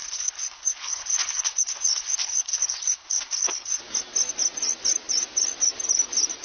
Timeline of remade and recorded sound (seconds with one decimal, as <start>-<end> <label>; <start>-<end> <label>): 0.0-3.8 remade; 3.8-6.4 recorded